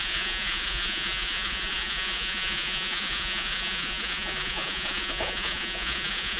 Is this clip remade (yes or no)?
yes